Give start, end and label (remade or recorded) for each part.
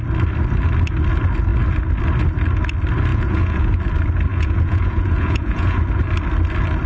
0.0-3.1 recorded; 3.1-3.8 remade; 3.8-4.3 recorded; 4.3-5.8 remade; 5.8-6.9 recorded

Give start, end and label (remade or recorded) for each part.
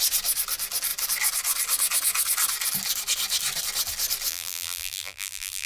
0.0-4.3 recorded; 4.3-5.7 remade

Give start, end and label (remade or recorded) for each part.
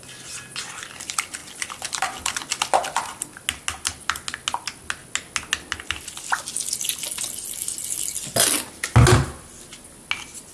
0.0-10.5 recorded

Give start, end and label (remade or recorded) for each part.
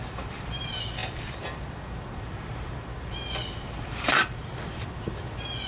0.0-5.7 remade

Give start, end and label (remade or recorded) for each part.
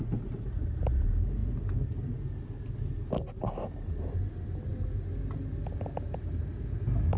0.0-7.2 recorded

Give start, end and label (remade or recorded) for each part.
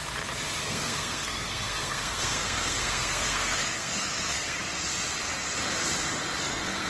0.0-0.6 recorded; 0.6-4.6 remade; 4.6-6.4 recorded; 6.4-6.9 remade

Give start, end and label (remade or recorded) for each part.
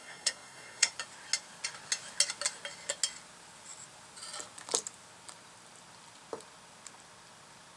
0.0-0.9 remade; 0.9-7.8 recorded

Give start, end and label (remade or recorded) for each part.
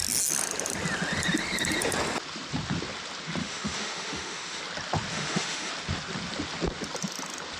0.0-3.4 recorded; 3.4-4.6 remade; 4.6-5.1 recorded; 5.1-5.7 remade; 5.7-7.6 recorded